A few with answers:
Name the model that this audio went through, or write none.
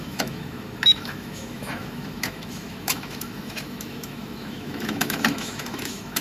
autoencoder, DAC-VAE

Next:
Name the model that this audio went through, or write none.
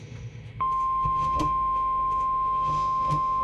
autoencoder, DAC-VAE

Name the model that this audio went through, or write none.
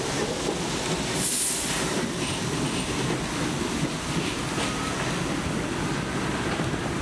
none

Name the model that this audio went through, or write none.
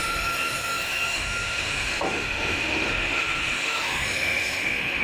autoencoder, DAC-VAE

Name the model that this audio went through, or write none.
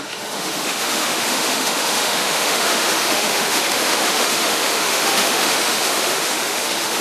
autoencoder, DAC-VAE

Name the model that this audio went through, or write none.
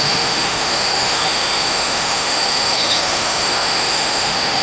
autoencoder, DAC-VAE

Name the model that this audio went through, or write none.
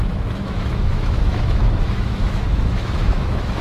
autoencoder, DAC-VAE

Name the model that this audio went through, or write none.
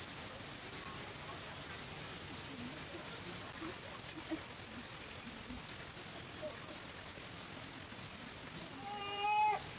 none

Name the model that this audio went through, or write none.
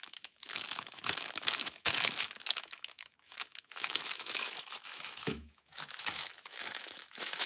autoencoder, DAC-VAE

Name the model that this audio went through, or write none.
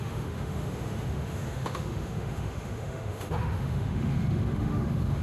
autoencoder, DAC-VAE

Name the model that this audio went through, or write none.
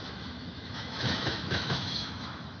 autoencoder, DAC-VAE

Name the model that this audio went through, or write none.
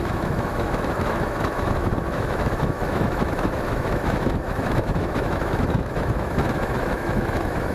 autoencoder, DAC-VAE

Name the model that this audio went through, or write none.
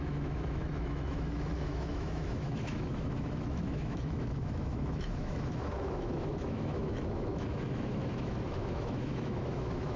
autoencoder, DAC-VAE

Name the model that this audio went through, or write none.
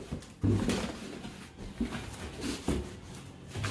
none